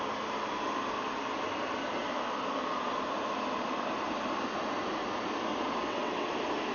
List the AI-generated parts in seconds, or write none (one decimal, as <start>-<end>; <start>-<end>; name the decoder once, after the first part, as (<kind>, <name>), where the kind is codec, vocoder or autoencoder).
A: 5.5-6.3 (vocoder, WaveNeXt)